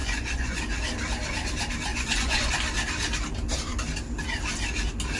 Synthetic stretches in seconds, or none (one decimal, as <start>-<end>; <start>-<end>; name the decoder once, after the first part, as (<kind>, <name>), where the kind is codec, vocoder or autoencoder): 0.0-0.6 (vocoder, Vocos); 1.9-2.5